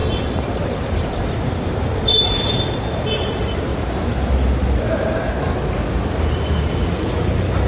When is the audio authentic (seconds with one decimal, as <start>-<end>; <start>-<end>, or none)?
3.7-6.6